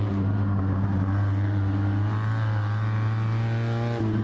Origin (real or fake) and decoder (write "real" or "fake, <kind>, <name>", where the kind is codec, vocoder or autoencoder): real